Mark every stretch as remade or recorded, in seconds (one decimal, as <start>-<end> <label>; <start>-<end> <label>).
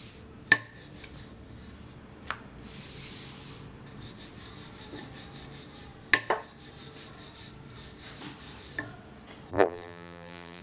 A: 0.0-9.5 recorded; 9.5-10.6 remade